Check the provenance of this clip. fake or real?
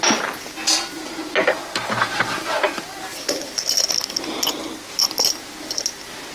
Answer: real